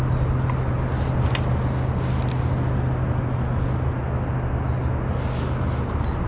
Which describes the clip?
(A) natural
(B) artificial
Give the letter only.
A